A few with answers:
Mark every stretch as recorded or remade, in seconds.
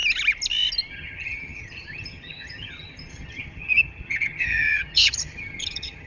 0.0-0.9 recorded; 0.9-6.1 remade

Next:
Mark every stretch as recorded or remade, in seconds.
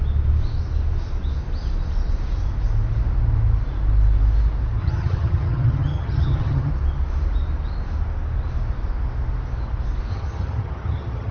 0.0-4.8 recorded; 4.8-6.7 remade; 6.7-10.1 recorded; 10.1-11.3 remade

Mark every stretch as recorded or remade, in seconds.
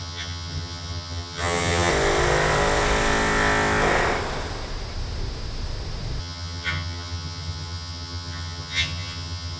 0.0-1.9 remade; 1.9-6.2 recorded; 6.2-9.6 remade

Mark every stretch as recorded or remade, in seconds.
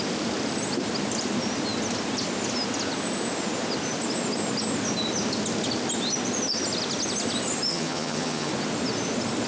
0.0-7.7 recorded; 7.7-8.5 remade; 8.5-9.5 recorded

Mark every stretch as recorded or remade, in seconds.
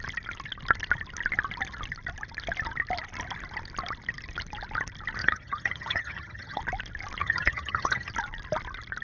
0.0-5.2 recorded; 5.2-6.6 remade; 6.6-7.2 recorded; 7.2-8.1 remade; 8.1-9.0 recorded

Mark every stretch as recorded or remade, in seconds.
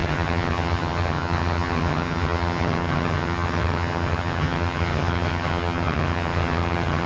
0.0-7.1 remade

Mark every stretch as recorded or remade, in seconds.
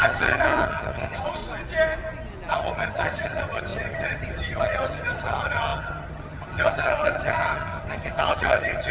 0.0-1.4 remade; 1.4-2.5 recorded; 2.5-8.9 remade